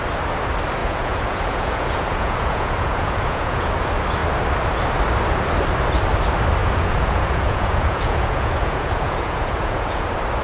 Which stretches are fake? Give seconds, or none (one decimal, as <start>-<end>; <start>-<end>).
0.8-3.7; 6.6-10.0